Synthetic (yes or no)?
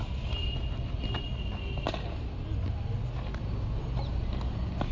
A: no